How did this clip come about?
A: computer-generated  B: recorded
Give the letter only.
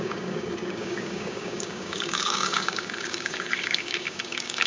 A